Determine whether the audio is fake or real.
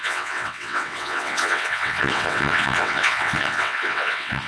fake